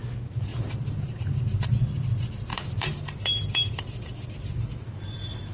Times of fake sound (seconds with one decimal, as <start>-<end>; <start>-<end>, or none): 0.5-1.8; 2.5-4.9